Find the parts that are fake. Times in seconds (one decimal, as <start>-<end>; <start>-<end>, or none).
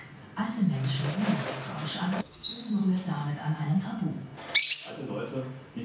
1.8-2.7; 3.2-3.8